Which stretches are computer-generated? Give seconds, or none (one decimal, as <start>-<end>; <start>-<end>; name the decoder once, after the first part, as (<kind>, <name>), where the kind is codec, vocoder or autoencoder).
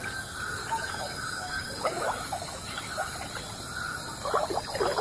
0.6-3.1 (autoencoder, DAC-VAE)